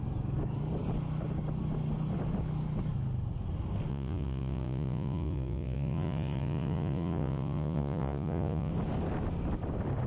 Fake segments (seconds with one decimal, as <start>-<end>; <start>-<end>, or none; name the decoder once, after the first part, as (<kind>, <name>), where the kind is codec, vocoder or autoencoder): 3.9-8.7 (vocoder, Vocos)